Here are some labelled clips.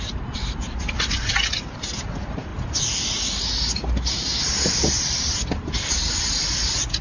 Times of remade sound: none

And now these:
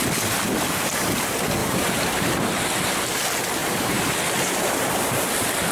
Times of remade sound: 1.6-2.6 (vocoder, BigVGAN v2); 3.6-4.1

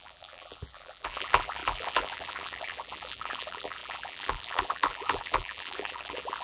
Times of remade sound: 0.0-6.4 (vocoder, BigVGAN v2)

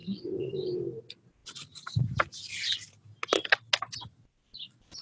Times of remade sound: 0.0-0.5 (vocoder, WaveNeXt)

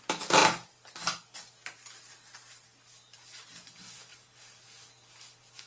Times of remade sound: none